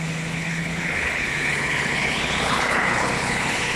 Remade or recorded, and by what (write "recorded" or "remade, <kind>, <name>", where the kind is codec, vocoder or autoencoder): remade, codec, HILCodec